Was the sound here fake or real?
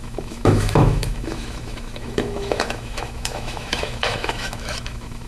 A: fake